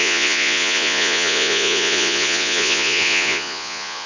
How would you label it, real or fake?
fake